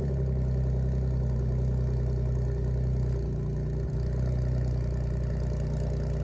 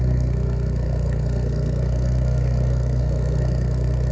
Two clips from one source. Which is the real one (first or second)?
first